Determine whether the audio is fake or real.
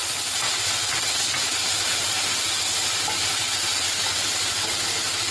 real